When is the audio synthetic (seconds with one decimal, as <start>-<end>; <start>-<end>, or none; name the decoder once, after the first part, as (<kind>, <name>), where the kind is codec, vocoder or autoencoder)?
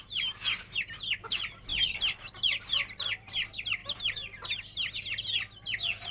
1.7-3.3 (vocoder, BigVGAN v2)